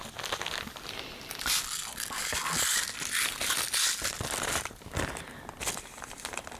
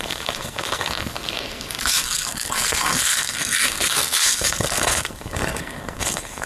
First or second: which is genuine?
first